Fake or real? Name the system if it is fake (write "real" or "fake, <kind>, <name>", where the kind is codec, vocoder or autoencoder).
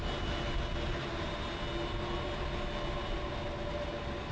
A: real